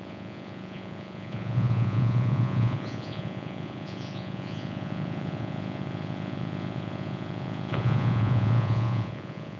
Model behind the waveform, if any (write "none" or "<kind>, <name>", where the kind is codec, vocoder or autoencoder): vocoder, Vocos